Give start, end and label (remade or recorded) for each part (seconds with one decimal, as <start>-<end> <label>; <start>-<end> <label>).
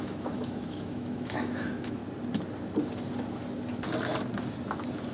0.0-2.0 remade; 2.0-5.1 recorded